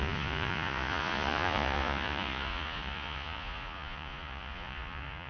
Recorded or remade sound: remade